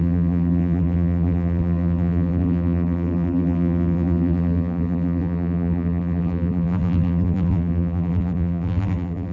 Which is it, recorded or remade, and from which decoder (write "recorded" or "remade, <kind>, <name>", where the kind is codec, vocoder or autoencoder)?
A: remade, vocoder, BigVGAN v2